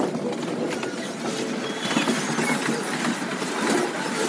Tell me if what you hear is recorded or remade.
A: recorded